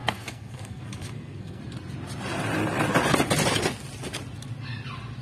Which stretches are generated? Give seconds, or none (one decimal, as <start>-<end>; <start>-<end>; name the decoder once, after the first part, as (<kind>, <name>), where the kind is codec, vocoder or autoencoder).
0.0-1.6 (codec, SNAC)